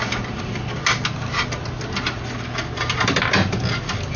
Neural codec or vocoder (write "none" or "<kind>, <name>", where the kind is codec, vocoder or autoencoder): none